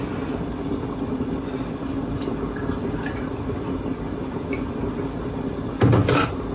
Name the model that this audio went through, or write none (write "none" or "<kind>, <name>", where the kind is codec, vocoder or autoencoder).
none